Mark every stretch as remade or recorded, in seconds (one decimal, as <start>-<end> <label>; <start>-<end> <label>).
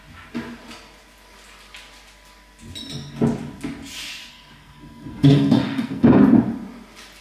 0.0-4.3 recorded; 4.3-6.2 remade; 6.2-7.2 recorded